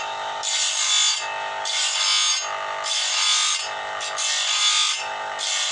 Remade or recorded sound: recorded